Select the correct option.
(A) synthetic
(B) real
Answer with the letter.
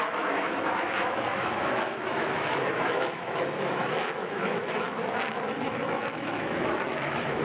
A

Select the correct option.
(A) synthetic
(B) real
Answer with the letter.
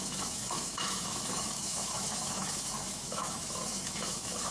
A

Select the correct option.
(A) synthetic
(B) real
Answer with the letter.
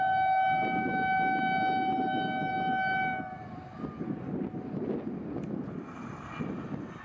B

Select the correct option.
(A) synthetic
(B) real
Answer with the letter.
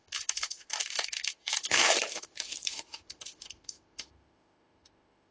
A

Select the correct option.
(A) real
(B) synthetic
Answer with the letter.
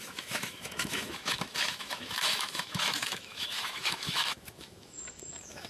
B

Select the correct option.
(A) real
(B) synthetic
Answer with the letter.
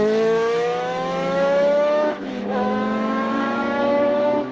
B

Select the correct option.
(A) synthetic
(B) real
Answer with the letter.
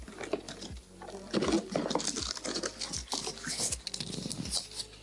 B